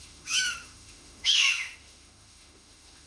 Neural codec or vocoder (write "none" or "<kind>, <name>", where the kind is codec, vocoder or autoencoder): autoencoder, DAC-VAE